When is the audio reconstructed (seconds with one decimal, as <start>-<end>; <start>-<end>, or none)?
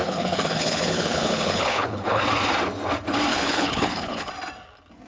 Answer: 0.0-2.2; 3.3-4.3